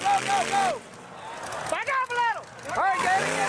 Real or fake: real